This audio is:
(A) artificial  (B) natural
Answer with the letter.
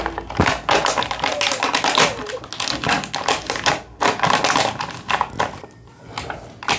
B